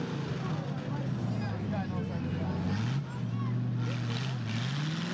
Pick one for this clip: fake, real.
real